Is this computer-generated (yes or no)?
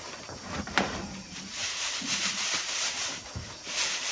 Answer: yes